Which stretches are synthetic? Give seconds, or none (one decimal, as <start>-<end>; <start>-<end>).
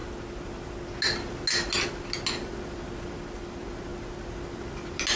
none